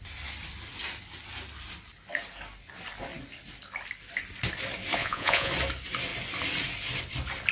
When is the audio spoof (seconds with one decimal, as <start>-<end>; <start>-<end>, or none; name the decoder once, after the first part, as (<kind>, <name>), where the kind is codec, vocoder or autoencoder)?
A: 5.0-5.5 (vocoder, Vocos)